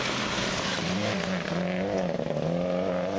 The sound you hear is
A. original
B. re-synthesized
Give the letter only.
A